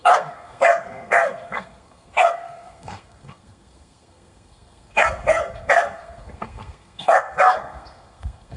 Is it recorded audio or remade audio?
remade